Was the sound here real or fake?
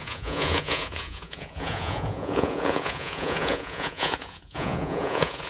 fake